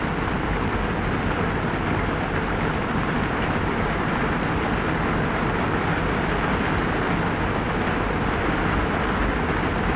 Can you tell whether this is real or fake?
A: real